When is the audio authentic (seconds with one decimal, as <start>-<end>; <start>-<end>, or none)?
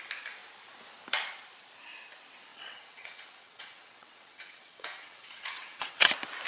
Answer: 0.0-2.5; 6.1-6.5